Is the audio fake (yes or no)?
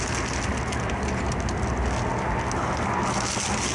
no